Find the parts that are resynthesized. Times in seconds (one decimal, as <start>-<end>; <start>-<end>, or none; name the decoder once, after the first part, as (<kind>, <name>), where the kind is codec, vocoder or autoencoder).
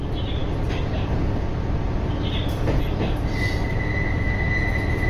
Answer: none